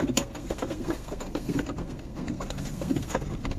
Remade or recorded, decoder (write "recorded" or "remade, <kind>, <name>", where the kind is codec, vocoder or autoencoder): remade, codec, SNAC